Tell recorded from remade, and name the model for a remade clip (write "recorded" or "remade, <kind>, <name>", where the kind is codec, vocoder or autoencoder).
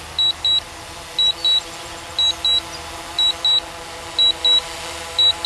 recorded